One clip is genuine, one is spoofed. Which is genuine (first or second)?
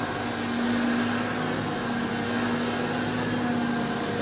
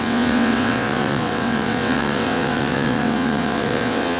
first